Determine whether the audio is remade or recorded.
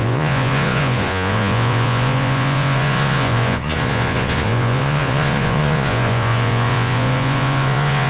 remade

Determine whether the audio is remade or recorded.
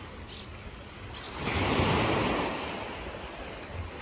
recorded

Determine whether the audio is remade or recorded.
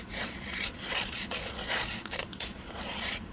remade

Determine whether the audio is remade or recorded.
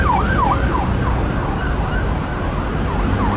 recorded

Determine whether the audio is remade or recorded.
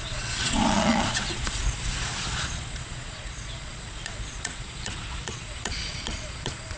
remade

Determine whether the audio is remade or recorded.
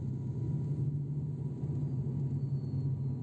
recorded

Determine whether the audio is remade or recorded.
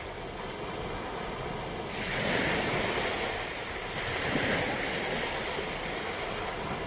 recorded